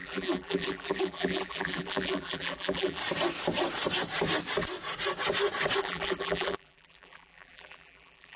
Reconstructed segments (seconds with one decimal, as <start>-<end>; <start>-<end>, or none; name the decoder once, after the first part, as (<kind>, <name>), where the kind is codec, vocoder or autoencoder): 0.0-3.0 (vocoder, BigVGAN v2); 5.8-8.4